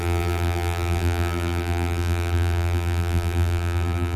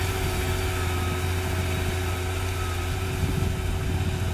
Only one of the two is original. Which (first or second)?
second